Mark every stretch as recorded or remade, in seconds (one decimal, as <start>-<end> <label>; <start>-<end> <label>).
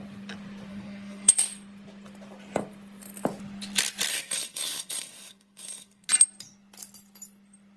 0.0-0.7 recorded; 0.7-1.3 remade; 1.3-4.1 recorded; 4.1-6.1 remade; 6.1-7.8 recorded